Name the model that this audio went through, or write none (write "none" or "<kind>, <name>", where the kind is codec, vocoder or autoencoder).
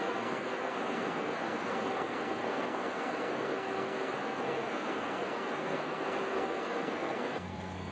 codec, SNAC